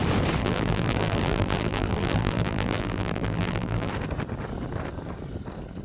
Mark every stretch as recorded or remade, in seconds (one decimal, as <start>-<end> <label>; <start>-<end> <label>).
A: 0.0-0.4 recorded; 0.4-3.9 remade; 3.9-5.8 recorded